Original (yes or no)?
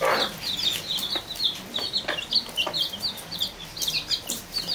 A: yes